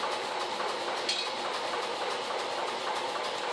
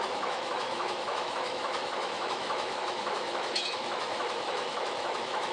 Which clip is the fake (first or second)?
second